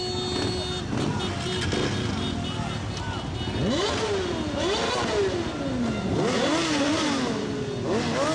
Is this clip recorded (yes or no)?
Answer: yes